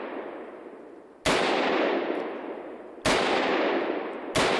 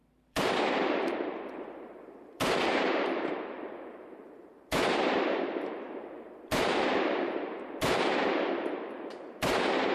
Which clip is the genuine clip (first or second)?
first